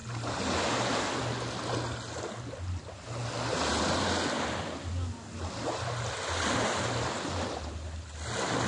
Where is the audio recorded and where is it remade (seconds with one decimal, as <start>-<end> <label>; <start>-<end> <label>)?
0.0-8.7 recorded